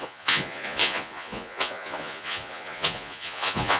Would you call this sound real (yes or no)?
no